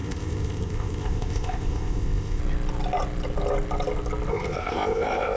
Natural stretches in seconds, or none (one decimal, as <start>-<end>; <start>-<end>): 2.4-4.3